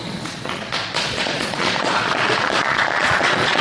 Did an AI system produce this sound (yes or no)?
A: yes